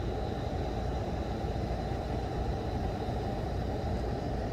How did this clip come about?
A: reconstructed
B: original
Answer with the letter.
B